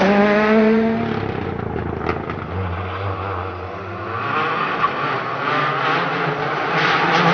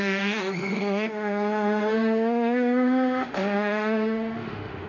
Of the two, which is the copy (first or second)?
second